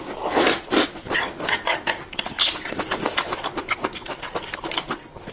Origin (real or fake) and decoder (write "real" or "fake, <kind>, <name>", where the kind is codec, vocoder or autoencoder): real